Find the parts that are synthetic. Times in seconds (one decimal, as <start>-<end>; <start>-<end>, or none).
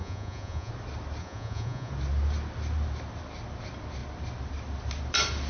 0.0-0.7; 1.2-1.9